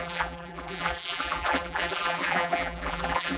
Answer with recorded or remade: remade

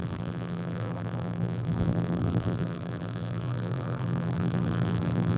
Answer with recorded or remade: remade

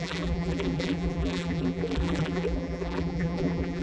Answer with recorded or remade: remade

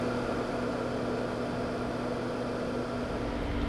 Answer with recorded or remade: recorded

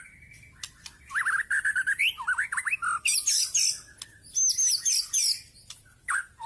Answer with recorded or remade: recorded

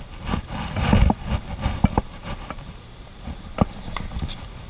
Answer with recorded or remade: recorded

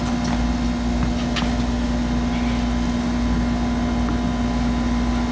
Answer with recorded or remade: recorded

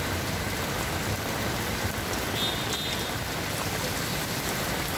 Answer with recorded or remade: recorded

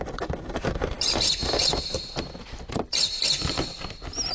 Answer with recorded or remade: remade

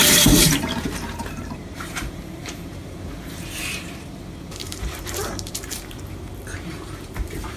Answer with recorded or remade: remade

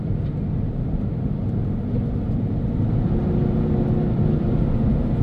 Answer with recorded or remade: recorded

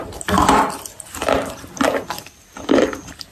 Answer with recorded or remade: recorded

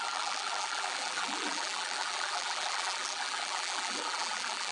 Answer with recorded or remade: remade